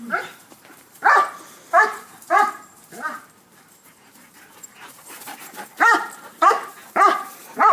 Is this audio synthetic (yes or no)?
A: yes